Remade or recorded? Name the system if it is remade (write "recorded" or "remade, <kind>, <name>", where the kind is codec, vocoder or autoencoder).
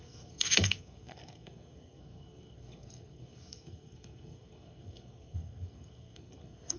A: remade, codec, SNAC